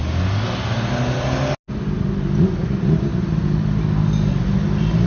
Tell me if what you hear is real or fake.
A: real